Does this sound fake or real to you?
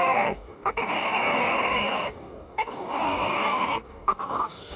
fake